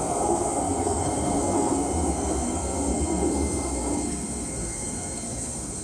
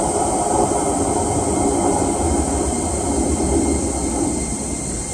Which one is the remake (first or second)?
first